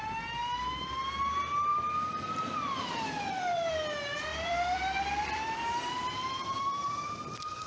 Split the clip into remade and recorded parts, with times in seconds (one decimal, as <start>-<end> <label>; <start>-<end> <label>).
0.0-1.7 recorded; 1.7-3.7 remade; 3.7-4.3 recorded; 4.3-7.7 remade